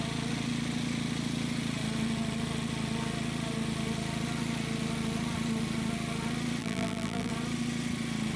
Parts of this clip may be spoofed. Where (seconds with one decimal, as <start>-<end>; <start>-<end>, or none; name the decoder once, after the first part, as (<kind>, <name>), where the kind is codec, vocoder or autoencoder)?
6.6-7.3 (vocoder, BigVGAN v2)